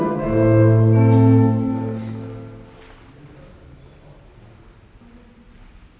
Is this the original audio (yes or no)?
yes